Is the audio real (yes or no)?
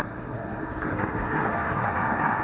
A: no